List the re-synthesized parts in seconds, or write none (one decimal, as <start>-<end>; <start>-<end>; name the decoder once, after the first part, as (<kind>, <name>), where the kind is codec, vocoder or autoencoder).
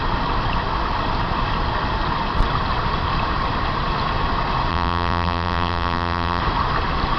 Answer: 4.7-6.4 (vocoder, BigVGAN v2)